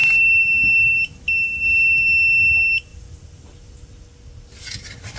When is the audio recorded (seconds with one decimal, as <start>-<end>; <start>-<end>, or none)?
0.0-5.2